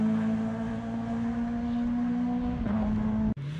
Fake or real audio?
real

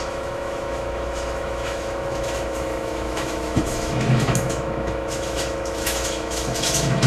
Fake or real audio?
fake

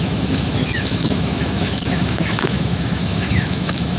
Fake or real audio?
fake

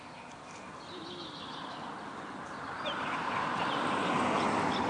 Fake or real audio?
real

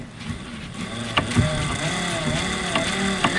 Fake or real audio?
real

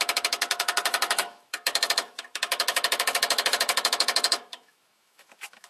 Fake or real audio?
fake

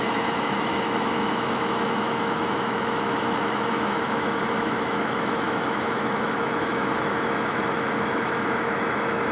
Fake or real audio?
fake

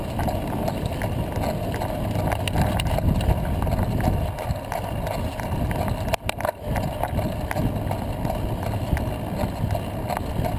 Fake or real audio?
real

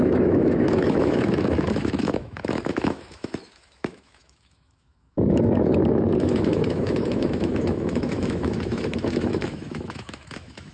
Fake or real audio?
fake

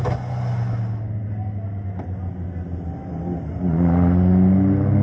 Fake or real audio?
real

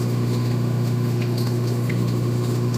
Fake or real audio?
fake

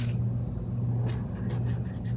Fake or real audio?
real